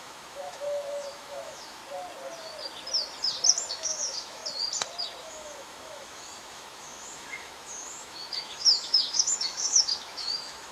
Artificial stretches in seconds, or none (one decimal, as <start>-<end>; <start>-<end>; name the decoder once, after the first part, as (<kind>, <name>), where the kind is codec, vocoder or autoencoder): 0.0-1.8 (autoencoder, DAC-VAE); 3.7-4.4; 5.2-10.7